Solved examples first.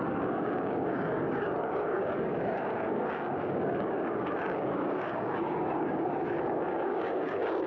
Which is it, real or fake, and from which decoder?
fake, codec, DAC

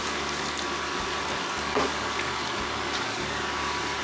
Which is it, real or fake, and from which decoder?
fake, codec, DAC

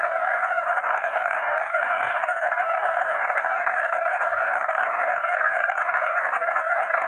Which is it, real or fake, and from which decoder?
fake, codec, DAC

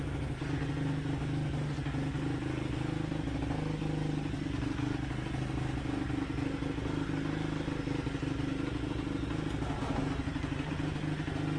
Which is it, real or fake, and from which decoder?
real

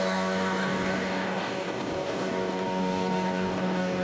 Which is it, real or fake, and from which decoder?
fake, codec, DAC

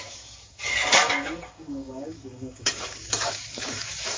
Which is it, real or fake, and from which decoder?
fake, codec, DAC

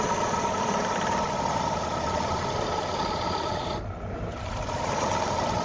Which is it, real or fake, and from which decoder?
real